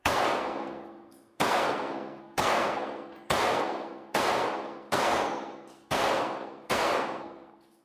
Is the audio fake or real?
fake